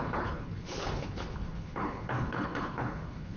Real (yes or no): no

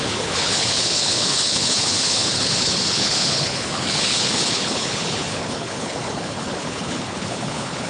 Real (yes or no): no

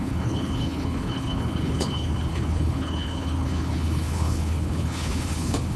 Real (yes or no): no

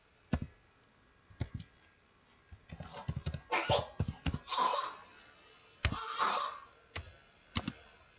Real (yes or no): yes